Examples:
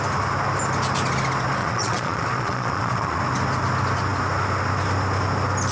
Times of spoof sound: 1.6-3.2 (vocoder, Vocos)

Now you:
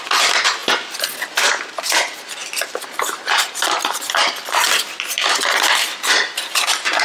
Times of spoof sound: 2.4-6.3 (vocoder, BigVGAN v2)

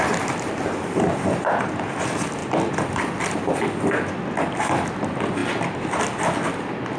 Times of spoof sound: 2.4-3.4 (vocoder, BigVGAN v2)

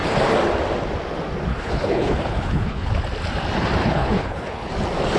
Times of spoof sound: 1.5-2.9 (codec, HILCodec); 3.8-4.7

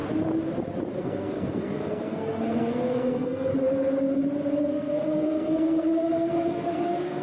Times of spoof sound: 1.0-3.5 (codec, SNAC); 4.7-7.2

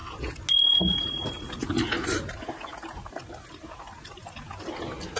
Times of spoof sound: none

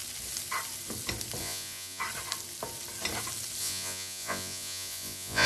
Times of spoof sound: 1.4-2.0 (vocoder, Vocos); 3.6-5.5

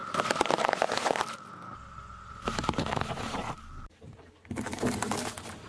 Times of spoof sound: 0.0-1.2 (vocoder, BigVGAN v2); 3.4-4.3